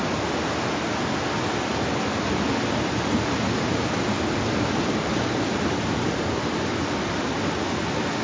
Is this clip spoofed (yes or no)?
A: no